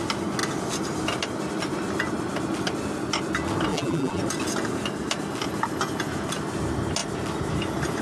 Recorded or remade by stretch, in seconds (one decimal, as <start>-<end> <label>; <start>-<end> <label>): 0.0-3.7 recorded; 3.7-4.2 remade; 4.2-8.0 recorded